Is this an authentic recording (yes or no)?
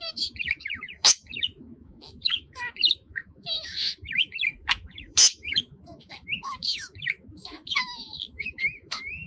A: no